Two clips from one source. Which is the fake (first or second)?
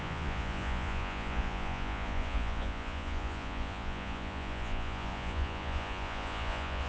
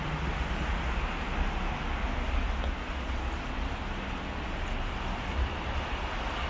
first